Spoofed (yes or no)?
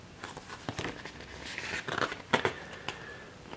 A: no